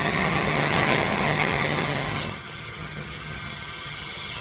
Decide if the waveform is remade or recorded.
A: remade